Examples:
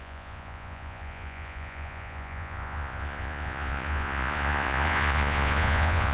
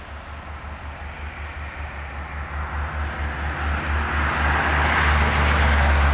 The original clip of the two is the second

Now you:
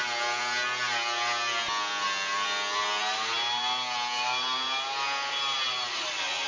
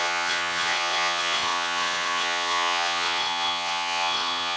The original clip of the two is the first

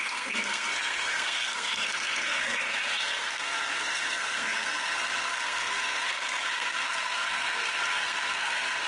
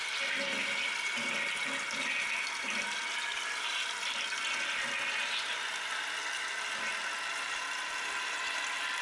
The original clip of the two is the second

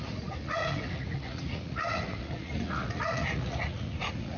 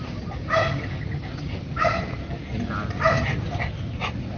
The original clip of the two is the second